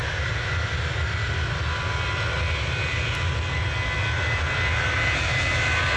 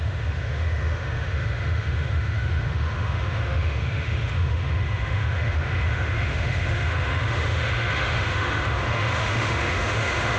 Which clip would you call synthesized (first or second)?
second